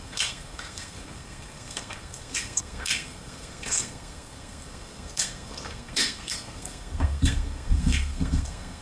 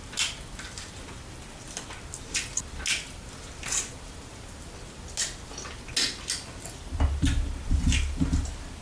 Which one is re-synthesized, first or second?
first